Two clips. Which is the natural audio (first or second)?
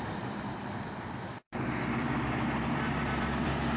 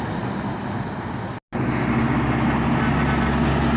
second